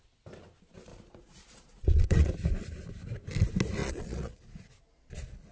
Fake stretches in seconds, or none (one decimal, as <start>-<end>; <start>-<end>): 0.9-2.3; 3.8-4.6